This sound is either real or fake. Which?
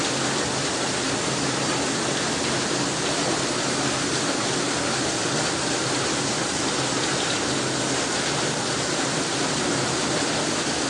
real